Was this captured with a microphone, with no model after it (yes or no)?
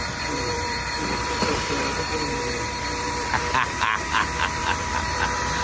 no